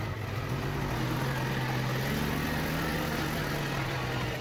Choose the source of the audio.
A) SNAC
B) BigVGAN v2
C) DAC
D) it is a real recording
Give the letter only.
D